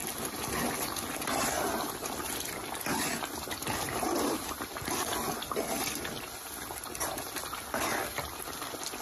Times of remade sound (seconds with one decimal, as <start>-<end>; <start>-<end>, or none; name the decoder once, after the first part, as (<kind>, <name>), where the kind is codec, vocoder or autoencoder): none